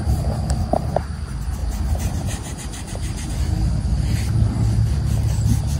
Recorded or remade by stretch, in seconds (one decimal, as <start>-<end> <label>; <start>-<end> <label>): 0.0-1.6 recorded; 1.6-3.3 remade; 3.3-5.8 recorded

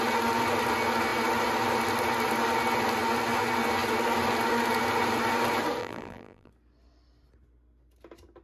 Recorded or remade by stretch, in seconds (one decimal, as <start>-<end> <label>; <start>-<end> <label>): 0.0-5.8 recorded; 5.8-6.5 remade; 6.5-8.4 recorded

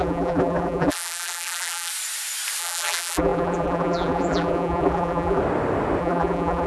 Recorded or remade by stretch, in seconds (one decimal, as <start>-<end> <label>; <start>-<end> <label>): 0.0-1.9 remade; 1.9-2.6 recorded; 2.6-5.4 remade; 5.4-6.0 recorded; 6.0-6.7 remade

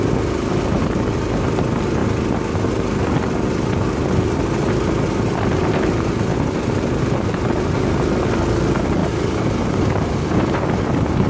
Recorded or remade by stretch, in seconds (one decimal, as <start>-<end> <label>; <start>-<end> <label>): 0.0-9.0 recorded; 9.0-11.3 remade

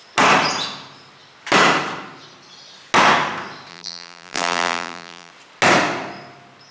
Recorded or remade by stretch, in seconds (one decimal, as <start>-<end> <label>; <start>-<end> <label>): 0.0-3.7 recorded; 3.7-5.3 remade; 5.3-6.7 recorded

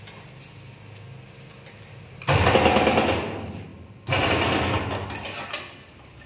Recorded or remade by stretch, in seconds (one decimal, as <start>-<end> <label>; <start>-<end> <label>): 0.0-6.3 recorded